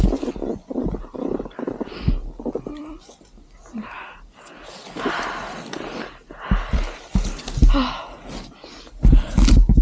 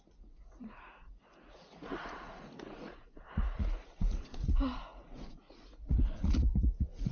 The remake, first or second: second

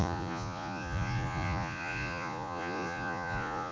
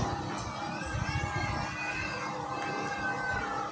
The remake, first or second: first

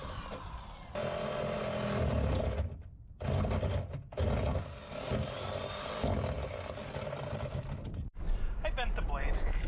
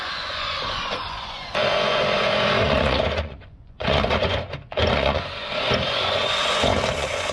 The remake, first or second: second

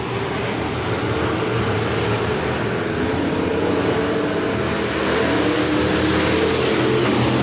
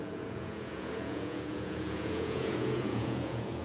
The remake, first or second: second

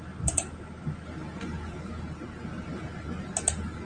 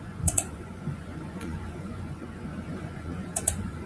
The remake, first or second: second